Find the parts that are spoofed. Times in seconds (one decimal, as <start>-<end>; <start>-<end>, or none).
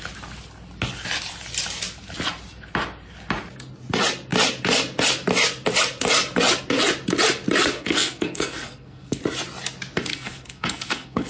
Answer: 7.7-9.2; 10.1-11.3